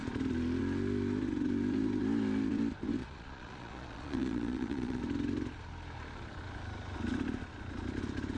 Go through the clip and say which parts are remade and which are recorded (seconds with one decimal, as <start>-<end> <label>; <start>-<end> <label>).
0.0-3.0 recorded; 3.0-5.0 remade; 5.0-8.4 recorded